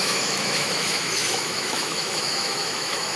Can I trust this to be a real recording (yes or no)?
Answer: no